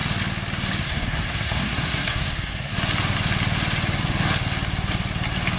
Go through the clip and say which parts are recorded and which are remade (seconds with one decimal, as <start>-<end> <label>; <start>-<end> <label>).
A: 0.0-0.8 recorded; 0.8-2.7 remade; 2.7-5.6 recorded